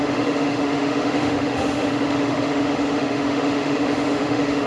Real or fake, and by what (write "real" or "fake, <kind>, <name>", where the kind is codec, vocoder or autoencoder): fake, autoencoder, DAC-VAE